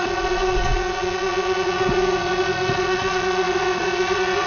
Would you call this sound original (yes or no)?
no